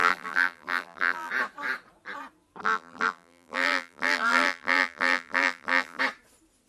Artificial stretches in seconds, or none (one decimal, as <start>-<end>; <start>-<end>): 0.0-1.3; 2.6-6.0